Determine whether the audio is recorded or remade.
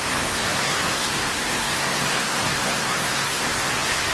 remade